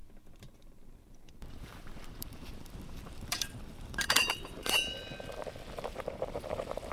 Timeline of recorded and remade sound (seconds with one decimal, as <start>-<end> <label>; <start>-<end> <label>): 0.0-0.5 recorded; 0.5-5.0 remade; 5.0-5.7 recorded; 5.7-6.9 remade